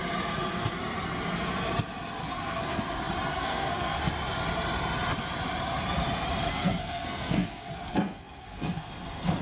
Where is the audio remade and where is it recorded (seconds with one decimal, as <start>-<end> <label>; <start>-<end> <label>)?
0.0-2.2 recorded; 2.2-2.8 remade; 2.8-3.3 recorded; 3.3-4.0 remade; 4.0-6.5 recorded; 6.5-8.9 remade; 8.9-9.4 recorded